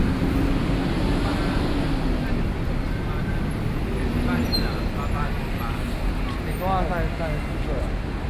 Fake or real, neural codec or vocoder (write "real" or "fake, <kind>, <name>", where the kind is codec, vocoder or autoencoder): real